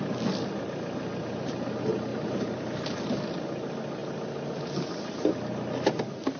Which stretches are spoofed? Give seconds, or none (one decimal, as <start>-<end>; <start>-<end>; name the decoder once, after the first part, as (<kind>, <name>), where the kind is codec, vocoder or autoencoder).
2.1-2.7 (vocoder, BigVGAN v2)